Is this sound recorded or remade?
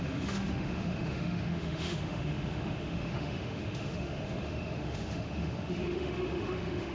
remade